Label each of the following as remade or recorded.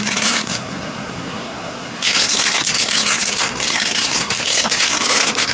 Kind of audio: remade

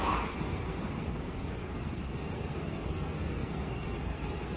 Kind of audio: remade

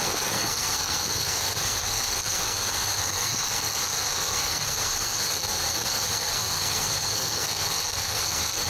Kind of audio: remade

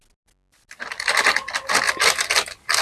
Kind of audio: recorded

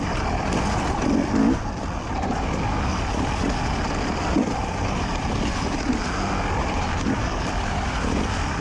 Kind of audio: recorded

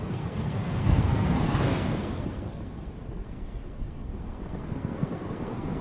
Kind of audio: remade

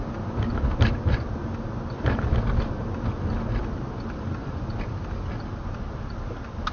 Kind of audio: recorded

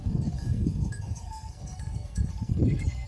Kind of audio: remade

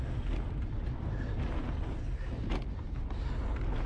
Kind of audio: recorded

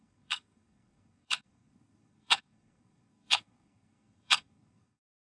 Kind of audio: remade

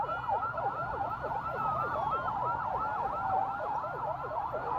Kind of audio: recorded